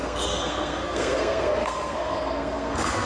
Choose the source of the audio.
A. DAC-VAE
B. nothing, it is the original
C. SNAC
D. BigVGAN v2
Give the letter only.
C